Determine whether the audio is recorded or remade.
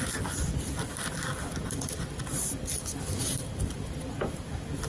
recorded